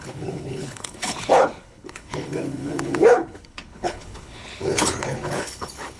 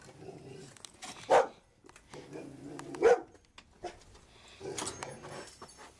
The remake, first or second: first